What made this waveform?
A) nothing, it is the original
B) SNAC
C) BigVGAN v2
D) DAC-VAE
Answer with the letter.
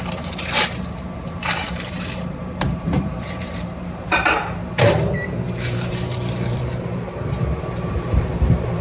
C